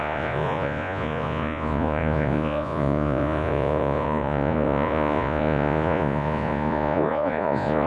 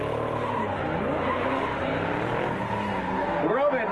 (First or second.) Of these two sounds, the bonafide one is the second